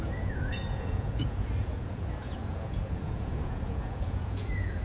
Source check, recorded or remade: remade